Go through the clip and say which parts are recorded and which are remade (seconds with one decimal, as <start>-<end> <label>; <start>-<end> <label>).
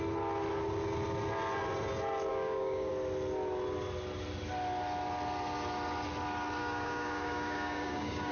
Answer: 0.0-2.3 recorded; 2.3-2.9 remade; 2.9-6.6 recorded; 6.6-8.3 remade